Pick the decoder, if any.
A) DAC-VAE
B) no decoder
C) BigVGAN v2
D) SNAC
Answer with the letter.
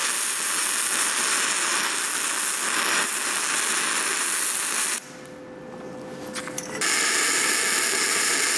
B